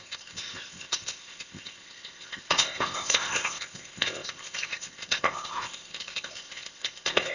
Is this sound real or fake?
fake